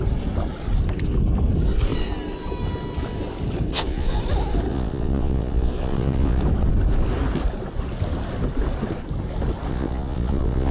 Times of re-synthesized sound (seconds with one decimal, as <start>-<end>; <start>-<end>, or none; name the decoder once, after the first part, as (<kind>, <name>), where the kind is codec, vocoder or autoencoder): 3.7-4.2 (vocoder, Vocos); 4.7-6.4; 9.7-10.7